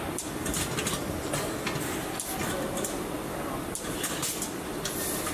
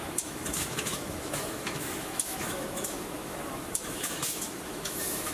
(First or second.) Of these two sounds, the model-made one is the second